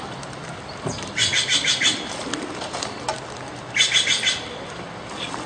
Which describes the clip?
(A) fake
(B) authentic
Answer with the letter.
B